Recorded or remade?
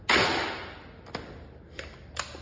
recorded